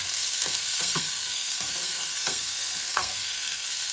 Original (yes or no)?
no